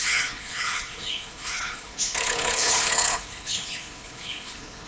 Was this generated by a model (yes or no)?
yes